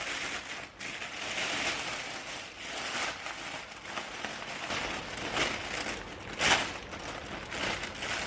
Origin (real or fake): real